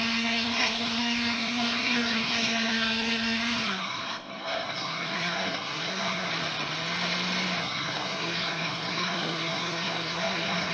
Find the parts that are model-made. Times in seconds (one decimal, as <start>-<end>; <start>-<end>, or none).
0.0-6.3; 7.6-10.7